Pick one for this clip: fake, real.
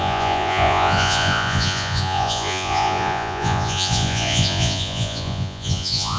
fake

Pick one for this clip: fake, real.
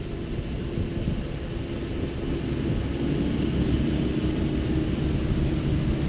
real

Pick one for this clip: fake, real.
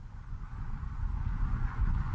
fake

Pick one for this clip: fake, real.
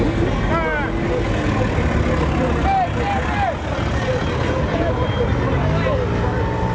real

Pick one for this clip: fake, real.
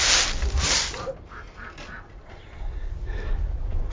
real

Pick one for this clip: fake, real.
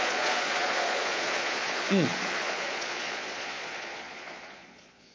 fake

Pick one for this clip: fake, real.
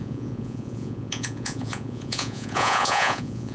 fake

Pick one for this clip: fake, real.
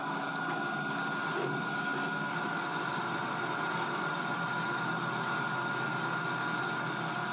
real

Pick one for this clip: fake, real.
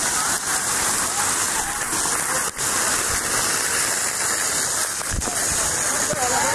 real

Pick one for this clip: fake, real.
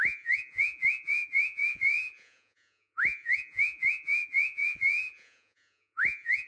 fake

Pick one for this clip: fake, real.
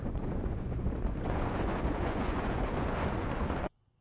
fake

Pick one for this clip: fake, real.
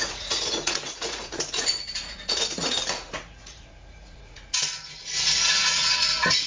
fake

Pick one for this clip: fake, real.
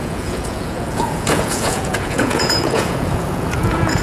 fake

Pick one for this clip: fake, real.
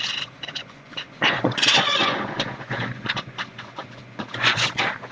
fake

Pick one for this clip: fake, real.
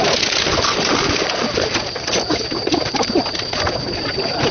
real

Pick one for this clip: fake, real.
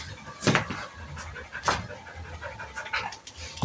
real